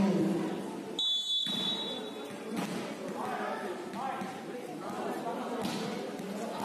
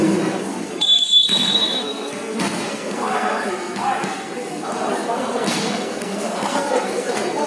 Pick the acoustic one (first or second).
first